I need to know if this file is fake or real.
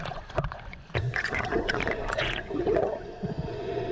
fake